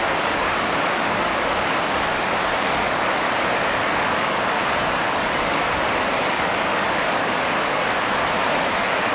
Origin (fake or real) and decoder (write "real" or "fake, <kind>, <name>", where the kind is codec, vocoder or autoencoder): fake, codec, DAC